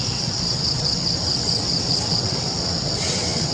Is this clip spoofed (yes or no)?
yes